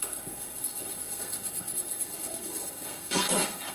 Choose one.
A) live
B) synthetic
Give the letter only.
B